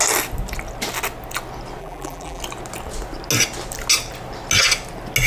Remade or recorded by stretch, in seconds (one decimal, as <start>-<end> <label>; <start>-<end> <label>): 0.0-1.8 recorded; 1.8-2.4 remade; 2.4-5.3 recorded